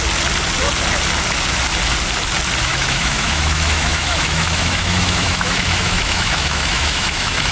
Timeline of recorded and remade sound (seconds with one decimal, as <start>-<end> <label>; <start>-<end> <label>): 0.0-2.7 recorded; 2.7-7.5 remade